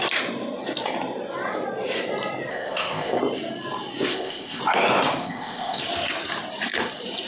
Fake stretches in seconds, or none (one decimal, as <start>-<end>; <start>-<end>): 2.5-3.2; 4.1-4.6; 5.2-5.8